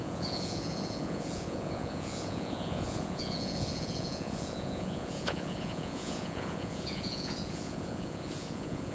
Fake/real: fake